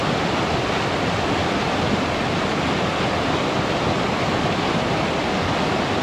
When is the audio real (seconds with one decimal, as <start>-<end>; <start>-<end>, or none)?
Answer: 0.0-6.0